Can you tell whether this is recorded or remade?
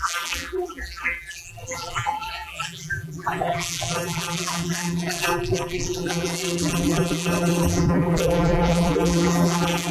remade